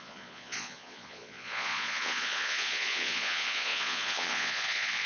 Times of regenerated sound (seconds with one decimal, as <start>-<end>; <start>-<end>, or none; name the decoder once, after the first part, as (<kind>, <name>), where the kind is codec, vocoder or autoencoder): 0.0-5.1 (vocoder, Vocos)